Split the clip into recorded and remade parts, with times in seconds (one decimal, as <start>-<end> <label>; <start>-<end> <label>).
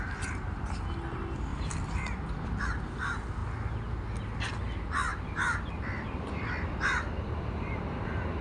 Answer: 0.0-1.5 recorded; 1.5-2.6 remade; 2.6-5.1 recorded; 5.1-6.5 remade; 6.5-8.4 recorded